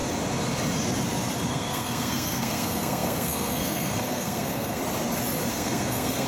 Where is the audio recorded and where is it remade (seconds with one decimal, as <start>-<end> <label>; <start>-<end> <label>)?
0.0-1.5 recorded; 1.5-4.8 remade; 4.8-5.5 recorded; 5.5-6.3 remade